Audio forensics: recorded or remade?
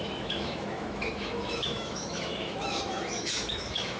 remade